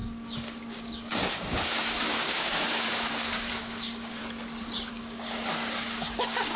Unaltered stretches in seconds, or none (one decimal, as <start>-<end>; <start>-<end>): 4.2-4.9